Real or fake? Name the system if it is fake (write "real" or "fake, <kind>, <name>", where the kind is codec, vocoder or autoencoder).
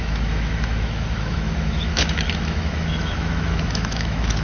fake, autoencoder, DAC-VAE